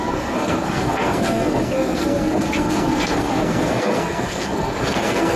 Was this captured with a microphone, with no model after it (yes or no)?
no